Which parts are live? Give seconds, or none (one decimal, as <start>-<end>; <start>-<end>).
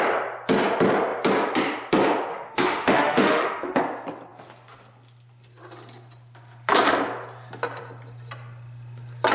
0.0-2.3; 3.8-9.3